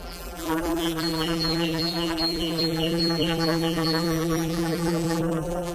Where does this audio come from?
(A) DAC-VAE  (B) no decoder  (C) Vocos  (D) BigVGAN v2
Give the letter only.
D